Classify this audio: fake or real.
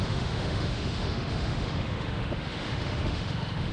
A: fake